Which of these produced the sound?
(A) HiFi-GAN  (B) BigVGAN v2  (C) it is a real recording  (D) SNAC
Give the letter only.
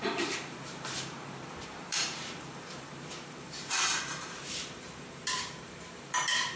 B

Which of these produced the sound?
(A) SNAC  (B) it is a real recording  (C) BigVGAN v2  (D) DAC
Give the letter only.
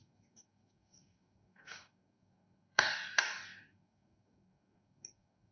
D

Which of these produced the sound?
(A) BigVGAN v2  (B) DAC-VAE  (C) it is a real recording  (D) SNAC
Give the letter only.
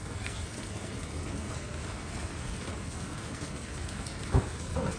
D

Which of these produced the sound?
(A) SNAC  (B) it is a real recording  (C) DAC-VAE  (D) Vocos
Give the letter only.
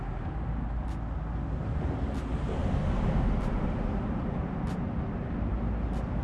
B